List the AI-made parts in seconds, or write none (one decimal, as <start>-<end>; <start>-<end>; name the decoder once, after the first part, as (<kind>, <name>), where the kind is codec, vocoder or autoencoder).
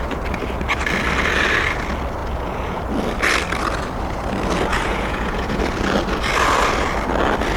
2.2-2.8 (vocoder, Vocos); 4.7-5.6